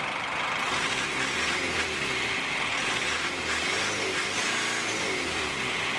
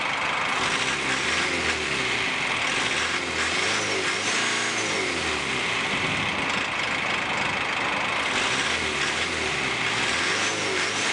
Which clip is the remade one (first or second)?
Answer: first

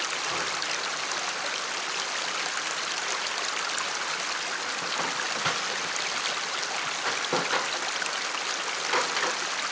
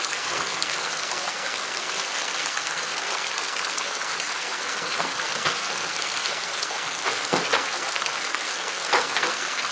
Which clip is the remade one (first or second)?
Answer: second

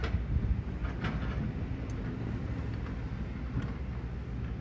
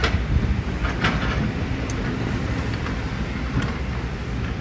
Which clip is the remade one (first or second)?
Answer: second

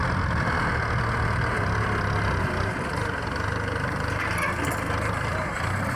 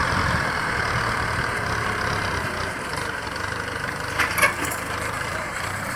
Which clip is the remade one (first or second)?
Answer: second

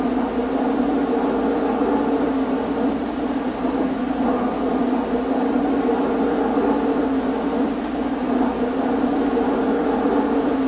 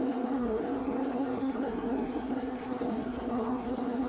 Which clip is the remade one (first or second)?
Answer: second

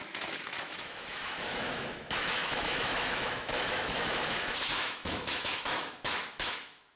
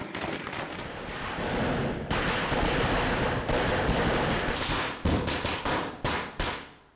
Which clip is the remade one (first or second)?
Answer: first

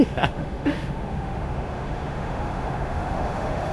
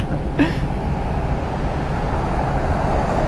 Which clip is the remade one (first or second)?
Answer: first